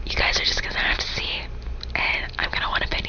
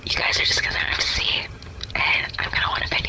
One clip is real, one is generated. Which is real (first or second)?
first